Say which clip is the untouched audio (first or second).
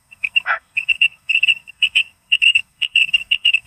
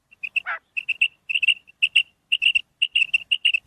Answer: second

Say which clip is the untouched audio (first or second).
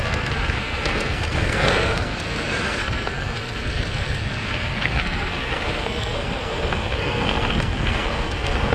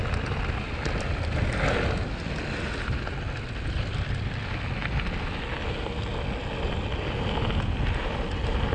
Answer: second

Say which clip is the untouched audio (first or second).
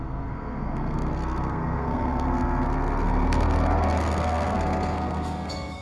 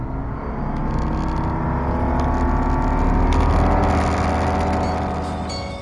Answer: second